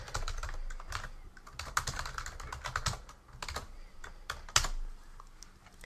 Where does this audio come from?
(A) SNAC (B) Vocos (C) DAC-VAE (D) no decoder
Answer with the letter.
D